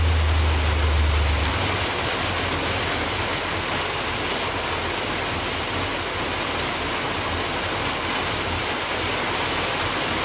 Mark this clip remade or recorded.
recorded